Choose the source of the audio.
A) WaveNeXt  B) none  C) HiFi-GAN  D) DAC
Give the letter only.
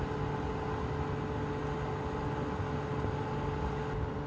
B